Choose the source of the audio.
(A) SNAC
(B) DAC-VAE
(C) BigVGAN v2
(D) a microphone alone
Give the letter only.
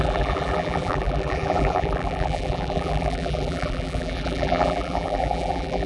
C